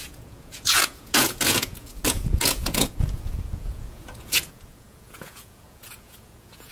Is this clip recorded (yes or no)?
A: no